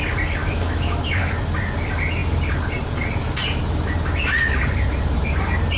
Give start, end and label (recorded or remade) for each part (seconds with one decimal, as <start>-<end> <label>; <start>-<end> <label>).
0.0-0.4 recorded; 0.4-1.3 remade; 1.3-5.8 recorded